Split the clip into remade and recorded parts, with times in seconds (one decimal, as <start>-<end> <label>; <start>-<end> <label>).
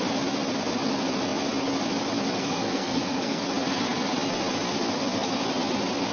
0.0-2.4 recorded; 2.4-3.4 remade; 3.4-6.1 recorded